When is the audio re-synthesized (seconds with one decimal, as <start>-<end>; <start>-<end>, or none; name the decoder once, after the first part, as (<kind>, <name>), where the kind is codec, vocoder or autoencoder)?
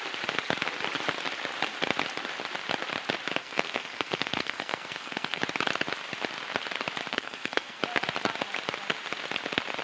3.4-5.4 (codec, SNAC); 7.1-7.8